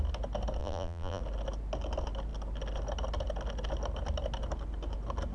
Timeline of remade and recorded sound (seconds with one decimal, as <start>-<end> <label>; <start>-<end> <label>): 0.0-0.6 recorded; 0.6-1.2 remade; 1.2-5.3 recorded

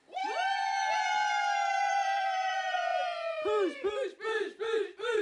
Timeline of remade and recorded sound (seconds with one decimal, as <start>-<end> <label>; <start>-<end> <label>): 0.0-0.8 remade; 0.8-1.9 recorded; 1.9-5.2 remade